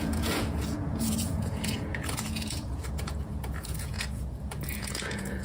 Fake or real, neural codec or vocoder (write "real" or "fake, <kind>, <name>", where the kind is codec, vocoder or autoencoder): fake, vocoder, Vocos